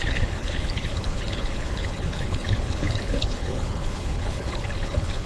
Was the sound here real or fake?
fake